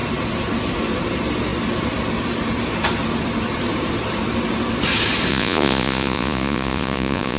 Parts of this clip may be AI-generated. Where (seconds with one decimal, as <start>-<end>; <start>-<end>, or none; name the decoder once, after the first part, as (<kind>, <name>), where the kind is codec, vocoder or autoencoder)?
5.3-7.4 (vocoder, Vocos)